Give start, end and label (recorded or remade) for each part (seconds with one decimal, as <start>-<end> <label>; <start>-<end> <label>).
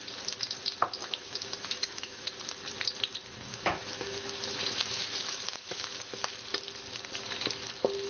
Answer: 0.0-1.0 recorded; 1.0-2.3 remade; 2.3-3.5 recorded; 3.5-6.4 remade; 6.4-8.1 recorded